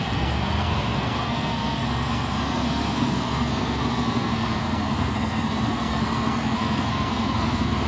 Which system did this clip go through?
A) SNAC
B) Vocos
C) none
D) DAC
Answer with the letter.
A